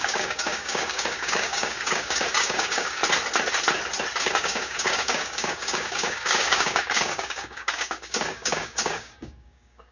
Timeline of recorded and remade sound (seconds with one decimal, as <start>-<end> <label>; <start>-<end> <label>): 0.0-3.0 remade; 3.0-4.2 recorded; 4.2-9.9 remade